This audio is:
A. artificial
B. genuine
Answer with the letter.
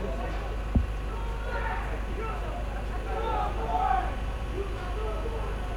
B